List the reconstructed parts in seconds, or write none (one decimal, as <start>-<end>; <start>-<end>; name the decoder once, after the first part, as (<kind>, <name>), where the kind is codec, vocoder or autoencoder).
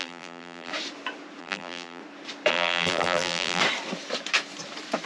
0.0-0.7 (vocoder, BigVGAN v2); 1.4-2.0; 2.5-3.6